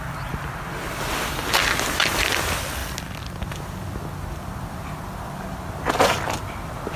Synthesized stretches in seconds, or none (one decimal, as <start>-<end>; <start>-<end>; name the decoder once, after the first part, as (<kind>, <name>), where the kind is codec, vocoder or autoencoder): 0.0-1.4 (vocoder, BigVGAN v2); 2.0-2.8; 6.3-7.0